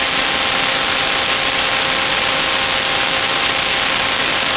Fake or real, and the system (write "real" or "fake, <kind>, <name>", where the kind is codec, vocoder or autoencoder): real